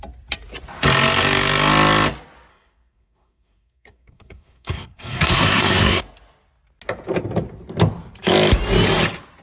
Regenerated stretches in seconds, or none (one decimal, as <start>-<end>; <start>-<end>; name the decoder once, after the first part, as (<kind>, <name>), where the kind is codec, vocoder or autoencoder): 2.5-6.0 (codec, SNAC)